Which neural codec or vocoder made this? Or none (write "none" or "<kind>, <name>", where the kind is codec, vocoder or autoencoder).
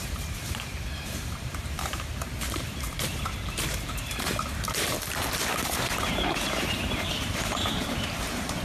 vocoder, BigVGAN v2